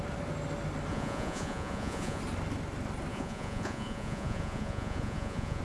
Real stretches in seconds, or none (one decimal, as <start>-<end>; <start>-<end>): 0.0-0.9; 2.2-3.1